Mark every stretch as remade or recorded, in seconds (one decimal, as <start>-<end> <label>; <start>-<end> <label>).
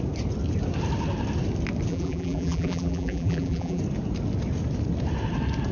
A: 0.0-1.9 recorded; 1.9-3.8 remade; 3.8-5.7 recorded